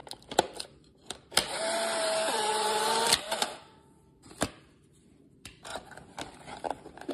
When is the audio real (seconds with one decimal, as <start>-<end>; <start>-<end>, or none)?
0.0-0.6; 5.7-7.1